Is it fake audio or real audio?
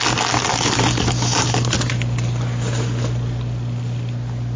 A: real